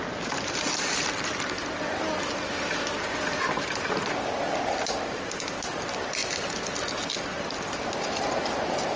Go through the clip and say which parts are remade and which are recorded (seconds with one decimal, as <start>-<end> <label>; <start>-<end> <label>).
0.0-9.0 recorded